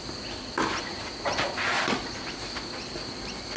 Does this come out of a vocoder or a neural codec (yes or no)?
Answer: no